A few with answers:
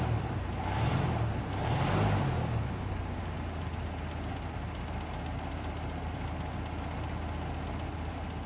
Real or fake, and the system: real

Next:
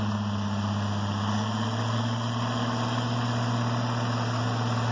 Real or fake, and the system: real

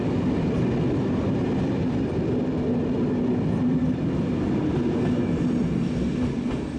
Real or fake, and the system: real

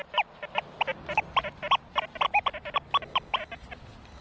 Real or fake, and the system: real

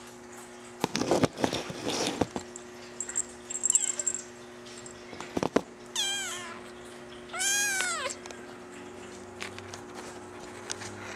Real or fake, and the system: real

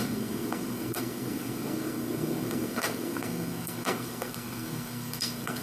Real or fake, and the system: fake, codec, SNAC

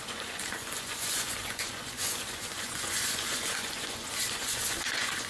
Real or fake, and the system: fake, vocoder, Vocos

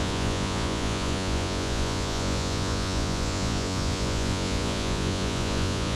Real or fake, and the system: fake, vocoder, Vocos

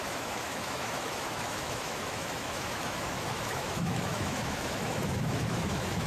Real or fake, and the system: fake, autoencoder, DAC-VAE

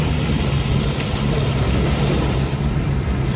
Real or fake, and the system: real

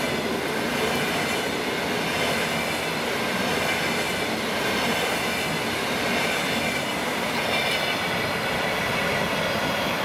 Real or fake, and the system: real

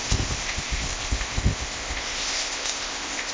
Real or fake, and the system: fake, codec, ZipCodec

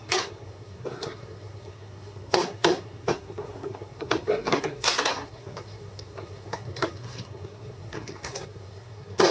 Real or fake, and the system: fake, codec, SNAC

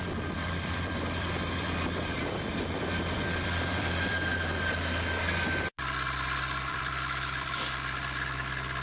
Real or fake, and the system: fake, vocoder, BigVGAN v2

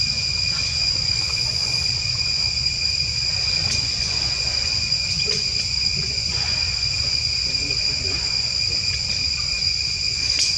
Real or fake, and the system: fake, vocoder, Vocos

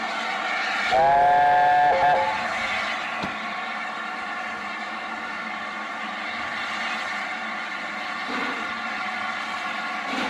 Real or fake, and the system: real